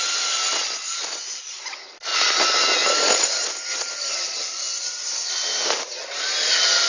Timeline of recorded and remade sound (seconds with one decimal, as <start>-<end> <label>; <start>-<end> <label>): 0.0-6.9 recorded